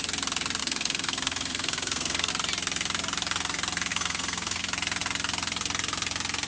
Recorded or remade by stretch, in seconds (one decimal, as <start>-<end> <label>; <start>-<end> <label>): 0.0-0.6 recorded; 0.6-2.3 remade; 2.3-3.9 recorded; 3.9-4.6 remade; 4.6-6.5 recorded

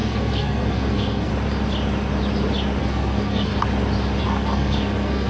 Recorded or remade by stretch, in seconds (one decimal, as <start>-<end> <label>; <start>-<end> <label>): 0.0-1.3 remade; 1.3-2.8 recorded; 2.8-3.5 remade; 3.5-4.2 recorded; 4.2-5.3 remade

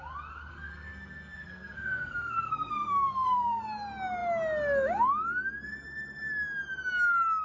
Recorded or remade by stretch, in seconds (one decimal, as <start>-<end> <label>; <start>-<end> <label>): 0.0-0.5 recorded; 0.5-3.6 remade; 3.6-7.4 recorded

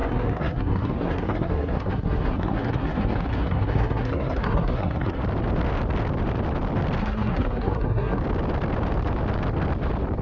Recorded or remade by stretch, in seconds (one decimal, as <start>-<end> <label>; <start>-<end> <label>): 0.0-5.2 remade; 5.2-7.0 recorded; 7.0-8.2 remade; 8.2-10.2 recorded

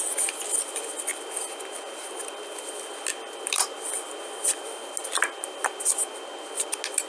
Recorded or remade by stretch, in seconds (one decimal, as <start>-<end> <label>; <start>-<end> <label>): 0.0-7.1 recorded